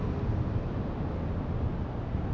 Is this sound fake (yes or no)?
no